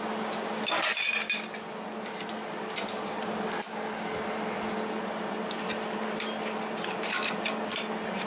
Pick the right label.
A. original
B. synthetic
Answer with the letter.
A